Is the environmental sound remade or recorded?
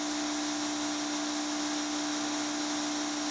recorded